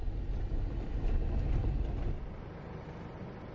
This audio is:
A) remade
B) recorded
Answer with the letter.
B